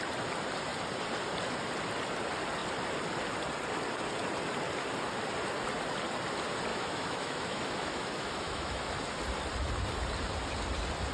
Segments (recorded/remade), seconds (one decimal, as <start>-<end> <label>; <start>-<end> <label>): 0.0-6.7 recorded; 6.7-8.9 remade; 8.9-11.1 recorded